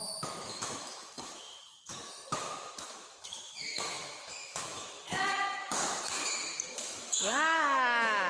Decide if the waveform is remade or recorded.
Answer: remade